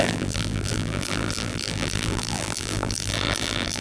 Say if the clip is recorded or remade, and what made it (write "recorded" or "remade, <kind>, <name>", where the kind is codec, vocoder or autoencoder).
remade, vocoder, BigVGAN v2